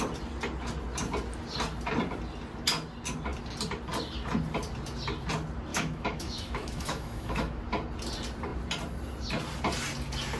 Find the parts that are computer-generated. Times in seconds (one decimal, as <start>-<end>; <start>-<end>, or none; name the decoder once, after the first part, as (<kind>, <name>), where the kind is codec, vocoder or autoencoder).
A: 5.7-7.6 (autoencoder, DAC-VAE)